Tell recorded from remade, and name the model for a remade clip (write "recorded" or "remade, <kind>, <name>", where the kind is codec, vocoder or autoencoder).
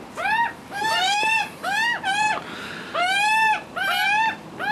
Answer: recorded